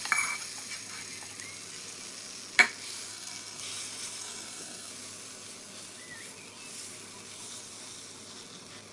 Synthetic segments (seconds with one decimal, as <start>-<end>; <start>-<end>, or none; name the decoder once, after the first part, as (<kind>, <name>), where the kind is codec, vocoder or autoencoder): 3.1-3.6 (codec, SNAC); 4.2-4.9